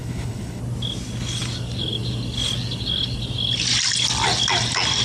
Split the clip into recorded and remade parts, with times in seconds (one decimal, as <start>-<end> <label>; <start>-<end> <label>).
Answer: 0.0-0.6 remade; 0.6-5.0 recorded